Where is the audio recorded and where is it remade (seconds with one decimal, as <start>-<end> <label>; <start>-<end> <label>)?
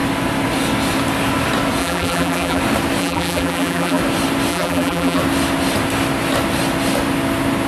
0.0-1.8 recorded; 1.8-2.6 remade; 2.6-3.0 recorded; 3.0-4.0 remade; 4.0-4.5 recorded; 4.5-5.2 remade; 5.2-7.7 recorded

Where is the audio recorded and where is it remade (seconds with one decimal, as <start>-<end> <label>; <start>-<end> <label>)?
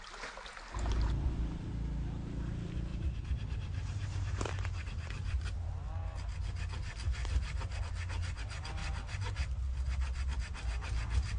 0.0-2.9 recorded; 2.9-5.7 remade; 5.7-7.2 recorded; 7.2-7.8 remade; 7.8-11.4 recorded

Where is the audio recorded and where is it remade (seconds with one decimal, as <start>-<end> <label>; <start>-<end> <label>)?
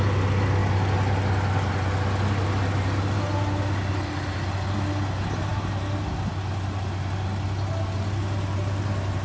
0.0-9.2 recorded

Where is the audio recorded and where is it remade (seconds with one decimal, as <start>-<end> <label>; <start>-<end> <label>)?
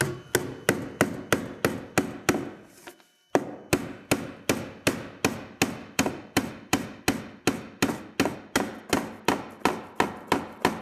0.0-5.8 recorded; 5.8-7.0 remade; 7.0-10.8 recorded